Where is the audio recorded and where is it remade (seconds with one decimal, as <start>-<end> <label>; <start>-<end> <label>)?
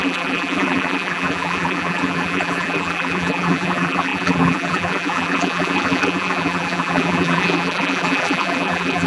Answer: 0.0-9.1 remade